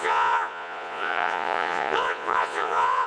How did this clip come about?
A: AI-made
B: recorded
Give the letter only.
A